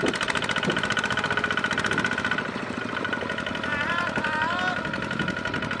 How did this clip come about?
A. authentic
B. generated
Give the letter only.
A